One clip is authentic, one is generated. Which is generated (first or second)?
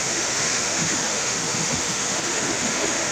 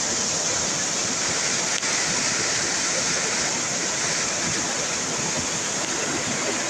first